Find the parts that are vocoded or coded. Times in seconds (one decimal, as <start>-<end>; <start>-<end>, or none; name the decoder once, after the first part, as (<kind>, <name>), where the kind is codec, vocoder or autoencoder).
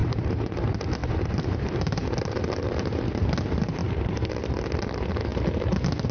0.0-0.6 (vocoder, BigVGAN v2); 1.0-3.2; 3.8-4.4